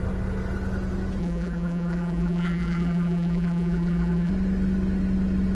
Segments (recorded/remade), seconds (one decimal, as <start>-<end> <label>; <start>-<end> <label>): 0.0-1.2 recorded; 1.2-4.3 remade; 4.3-5.5 recorded